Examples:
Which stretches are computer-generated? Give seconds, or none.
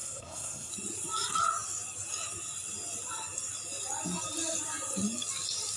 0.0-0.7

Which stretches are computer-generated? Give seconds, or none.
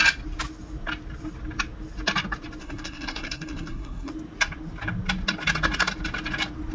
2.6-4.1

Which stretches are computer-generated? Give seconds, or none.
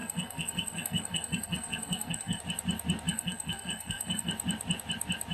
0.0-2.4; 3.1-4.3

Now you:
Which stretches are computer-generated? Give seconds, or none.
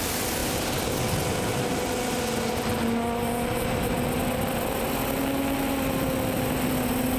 none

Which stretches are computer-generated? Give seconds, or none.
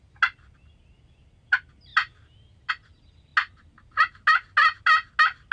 none